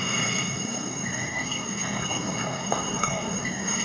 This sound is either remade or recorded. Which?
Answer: remade